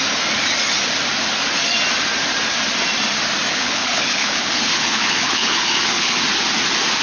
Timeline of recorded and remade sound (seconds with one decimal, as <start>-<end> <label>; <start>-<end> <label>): 0.0-3.5 recorded; 3.5-6.2 remade; 6.2-7.0 recorded